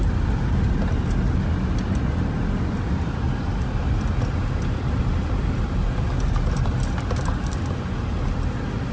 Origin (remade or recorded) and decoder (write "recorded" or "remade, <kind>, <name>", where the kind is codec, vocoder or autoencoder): recorded